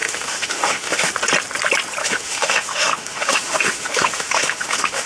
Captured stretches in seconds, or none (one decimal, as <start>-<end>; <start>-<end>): 1.1-2.0